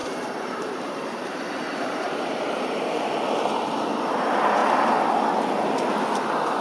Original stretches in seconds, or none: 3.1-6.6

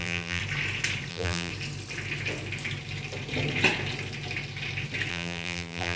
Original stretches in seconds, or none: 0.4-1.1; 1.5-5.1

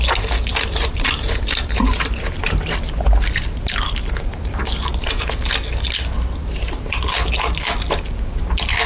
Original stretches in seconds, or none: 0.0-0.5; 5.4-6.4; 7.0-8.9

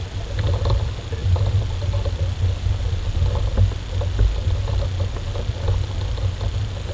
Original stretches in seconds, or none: 0.0-6.9

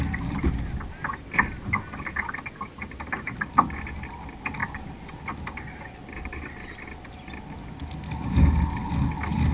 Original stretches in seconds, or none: 0.0-9.5

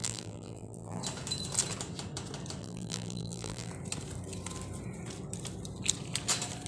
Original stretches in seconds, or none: 1.0-2.6; 3.7-6.7